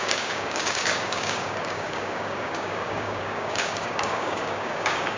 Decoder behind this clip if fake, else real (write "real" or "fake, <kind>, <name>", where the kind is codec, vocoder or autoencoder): fake, codec, DAC